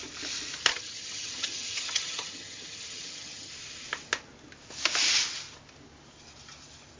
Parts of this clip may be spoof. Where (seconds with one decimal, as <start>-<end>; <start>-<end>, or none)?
0.7-3.5